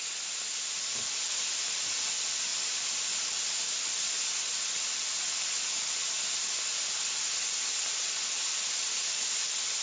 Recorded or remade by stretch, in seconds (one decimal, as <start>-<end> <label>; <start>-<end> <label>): 0.0-9.8 recorded